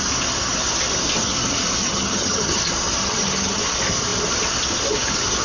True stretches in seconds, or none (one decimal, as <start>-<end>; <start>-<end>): 0.0-1.8; 2.6-3.0; 3.6-5.4

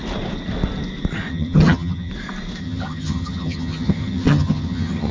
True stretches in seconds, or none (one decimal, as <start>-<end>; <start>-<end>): 0.0-1.3; 2.1-2.6

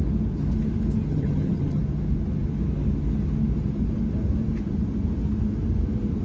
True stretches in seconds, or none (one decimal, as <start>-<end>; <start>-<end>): 0.0-1.1; 1.8-6.2

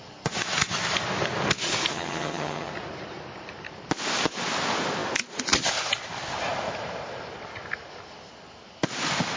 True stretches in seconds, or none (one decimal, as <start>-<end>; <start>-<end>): 0.0-1.9; 2.7-9.4

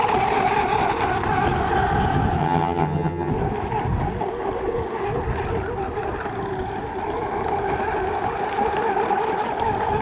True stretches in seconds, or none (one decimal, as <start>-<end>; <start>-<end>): 0.0-2.4; 3.3-10.0

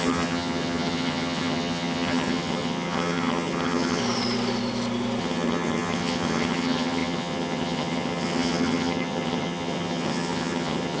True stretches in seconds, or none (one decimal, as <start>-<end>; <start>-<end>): 4.0-5.2

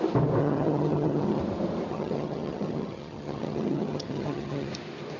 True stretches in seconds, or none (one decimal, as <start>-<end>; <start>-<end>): 0.0-0.4; 1.4-1.9; 4.7-5.2